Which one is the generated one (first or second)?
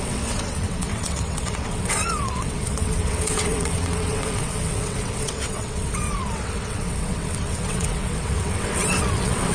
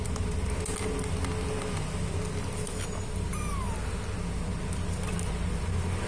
first